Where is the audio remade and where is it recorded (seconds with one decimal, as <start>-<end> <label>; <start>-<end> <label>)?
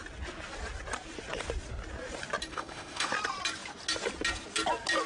0.0-2.5 recorded; 2.5-3.1 remade; 3.1-5.1 recorded